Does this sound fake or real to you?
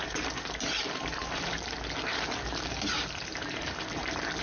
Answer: fake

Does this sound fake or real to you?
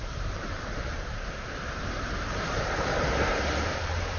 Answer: fake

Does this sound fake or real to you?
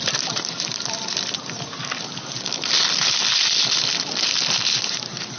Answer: real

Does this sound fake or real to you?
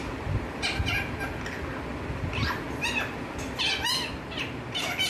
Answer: real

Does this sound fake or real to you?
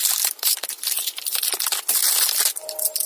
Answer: fake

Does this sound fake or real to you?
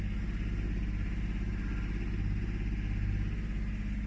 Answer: real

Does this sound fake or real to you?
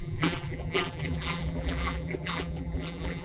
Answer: fake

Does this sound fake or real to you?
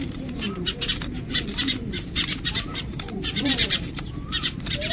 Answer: fake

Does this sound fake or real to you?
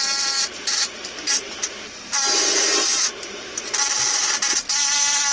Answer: fake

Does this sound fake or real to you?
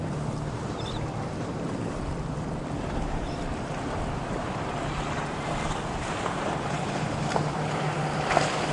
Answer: fake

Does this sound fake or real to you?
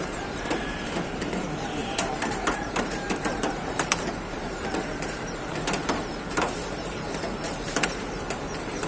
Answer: fake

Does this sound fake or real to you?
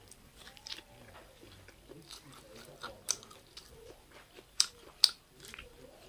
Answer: fake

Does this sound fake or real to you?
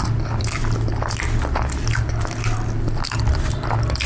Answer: real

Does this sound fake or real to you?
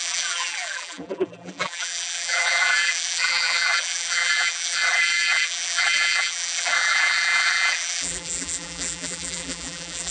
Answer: fake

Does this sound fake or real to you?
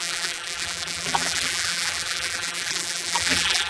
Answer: fake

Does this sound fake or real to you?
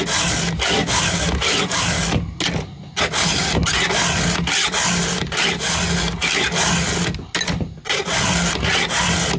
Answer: real